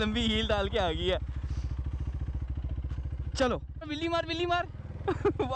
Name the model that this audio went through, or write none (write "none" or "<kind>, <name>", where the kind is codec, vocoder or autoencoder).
none